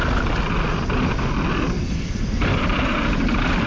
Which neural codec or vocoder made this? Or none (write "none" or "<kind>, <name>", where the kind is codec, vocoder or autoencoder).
none